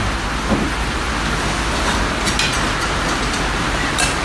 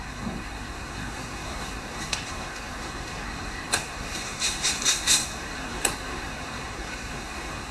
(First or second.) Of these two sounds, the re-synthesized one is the second